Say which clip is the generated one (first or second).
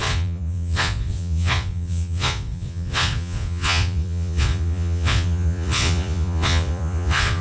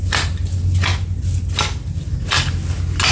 first